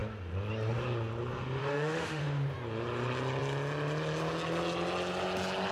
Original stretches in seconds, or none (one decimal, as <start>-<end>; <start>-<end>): 0.0-1.6; 2.2-5.7